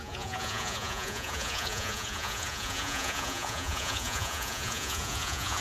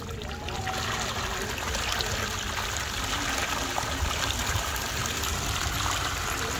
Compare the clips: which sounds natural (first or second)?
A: second